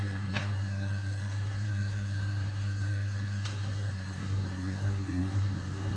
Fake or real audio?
fake